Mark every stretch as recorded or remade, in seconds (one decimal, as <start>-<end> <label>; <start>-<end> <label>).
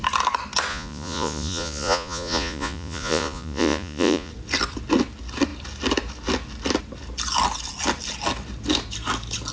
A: 0.0-0.7 recorded; 0.7-4.3 remade; 4.3-9.5 recorded